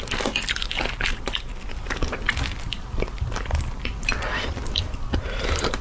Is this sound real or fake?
real